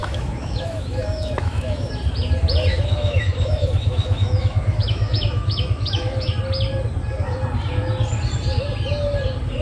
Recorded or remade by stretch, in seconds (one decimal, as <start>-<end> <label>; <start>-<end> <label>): 0.0-1.9 remade; 1.9-2.7 recorded; 2.7-6.3 remade; 6.3-9.6 recorded